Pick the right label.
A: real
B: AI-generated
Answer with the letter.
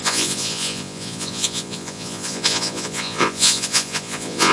B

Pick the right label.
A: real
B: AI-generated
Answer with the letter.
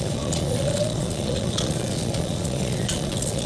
B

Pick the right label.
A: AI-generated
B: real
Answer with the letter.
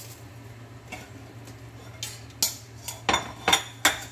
B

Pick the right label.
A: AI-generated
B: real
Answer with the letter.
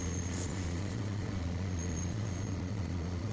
A